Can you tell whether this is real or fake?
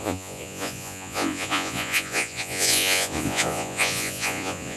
fake